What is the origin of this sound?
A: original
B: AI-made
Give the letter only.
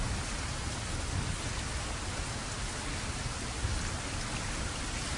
A